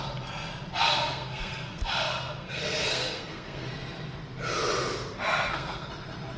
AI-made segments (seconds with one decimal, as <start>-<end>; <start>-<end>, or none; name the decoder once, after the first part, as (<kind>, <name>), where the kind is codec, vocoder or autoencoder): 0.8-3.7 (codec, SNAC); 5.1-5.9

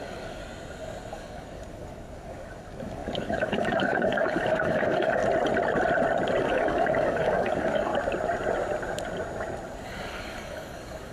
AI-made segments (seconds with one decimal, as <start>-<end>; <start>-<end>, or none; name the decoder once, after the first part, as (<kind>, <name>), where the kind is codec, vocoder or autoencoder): 0.0-0.4 (codec, DAC); 1.1-5.2; 6.4-7.9; 10.1-11.1

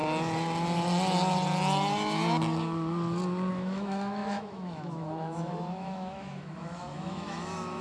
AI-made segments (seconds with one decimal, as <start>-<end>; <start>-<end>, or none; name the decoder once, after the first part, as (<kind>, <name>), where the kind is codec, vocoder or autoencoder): 3.5-7.8 (autoencoder, DAC-VAE)